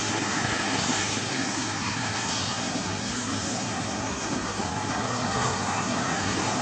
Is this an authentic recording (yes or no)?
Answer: no